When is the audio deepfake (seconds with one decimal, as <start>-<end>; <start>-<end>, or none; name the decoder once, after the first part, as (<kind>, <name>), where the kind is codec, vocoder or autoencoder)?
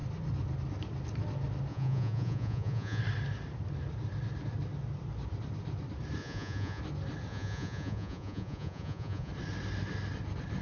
1.7-3.0 (vocoder, Vocos); 6.2-6.8; 7.3-9.3